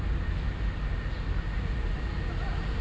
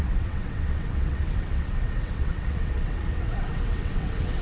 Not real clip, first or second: second